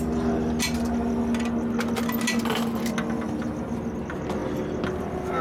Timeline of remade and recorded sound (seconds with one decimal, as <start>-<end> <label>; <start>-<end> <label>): 0.0-5.4 recorded